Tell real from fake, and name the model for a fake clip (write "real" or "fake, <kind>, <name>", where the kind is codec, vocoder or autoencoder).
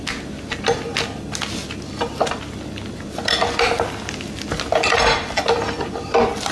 real